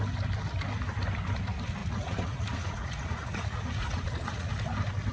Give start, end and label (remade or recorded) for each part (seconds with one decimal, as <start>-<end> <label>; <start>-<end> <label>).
0.0-1.8 recorded; 1.8-4.5 remade; 4.5-5.1 recorded